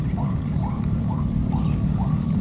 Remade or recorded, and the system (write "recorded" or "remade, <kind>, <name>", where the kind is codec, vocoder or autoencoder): recorded